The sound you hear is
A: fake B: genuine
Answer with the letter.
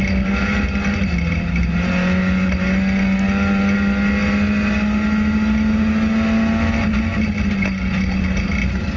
B